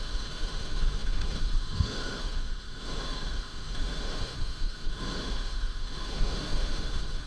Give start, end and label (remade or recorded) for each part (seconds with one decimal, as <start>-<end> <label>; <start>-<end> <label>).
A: 0.0-7.3 remade